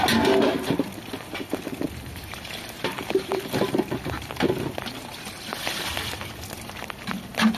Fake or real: real